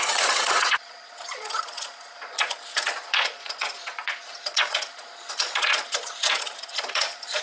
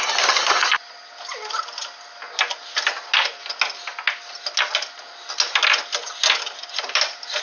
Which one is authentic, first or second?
second